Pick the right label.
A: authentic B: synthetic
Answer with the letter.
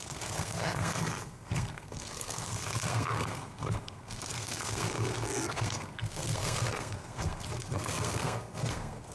B